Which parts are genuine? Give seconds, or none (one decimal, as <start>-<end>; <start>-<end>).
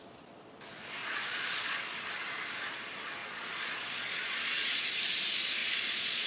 0.0-1.0; 1.8-3.2; 4.9-5.6